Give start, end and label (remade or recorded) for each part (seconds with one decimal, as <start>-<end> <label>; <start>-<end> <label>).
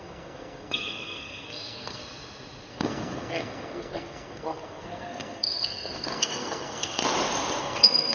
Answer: 0.0-2.0 remade; 2.0-2.7 recorded; 2.7-7.0 remade; 7.0-7.6 recorded; 7.6-8.1 remade